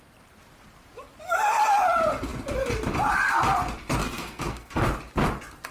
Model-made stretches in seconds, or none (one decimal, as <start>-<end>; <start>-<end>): 4.0-4.8